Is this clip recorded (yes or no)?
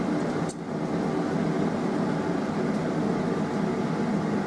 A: yes